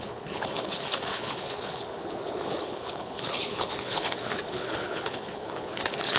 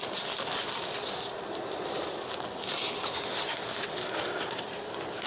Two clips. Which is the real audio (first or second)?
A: second